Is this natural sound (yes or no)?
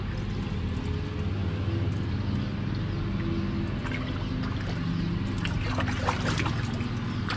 yes